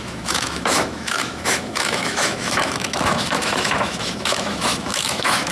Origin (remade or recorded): remade